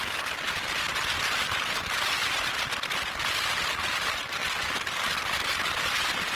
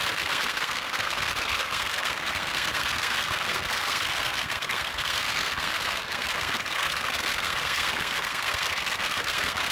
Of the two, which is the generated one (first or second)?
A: second